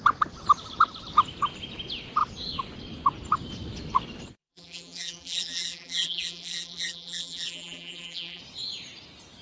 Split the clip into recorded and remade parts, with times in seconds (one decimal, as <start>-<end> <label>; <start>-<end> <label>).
0.0-4.4 recorded; 4.4-8.4 remade; 8.4-9.4 recorded

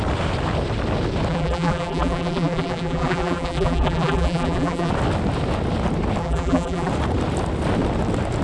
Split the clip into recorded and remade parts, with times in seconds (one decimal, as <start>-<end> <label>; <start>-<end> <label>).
0.0-1.3 recorded; 1.3-4.9 remade; 4.9-6.2 recorded; 6.2-6.9 remade; 6.9-8.4 recorded